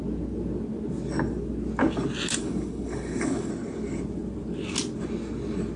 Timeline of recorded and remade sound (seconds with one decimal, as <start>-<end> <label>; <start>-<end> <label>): 0.0-2.4 recorded; 2.4-3.5 remade; 3.5-5.8 recorded